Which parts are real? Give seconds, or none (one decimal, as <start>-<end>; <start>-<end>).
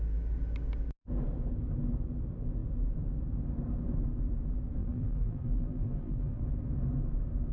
0.0-4.8; 6.4-7.5